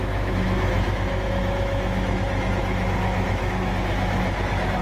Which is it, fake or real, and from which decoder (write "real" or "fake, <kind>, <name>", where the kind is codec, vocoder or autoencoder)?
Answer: fake, autoencoder, DAC-VAE